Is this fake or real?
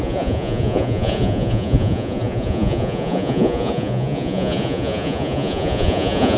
fake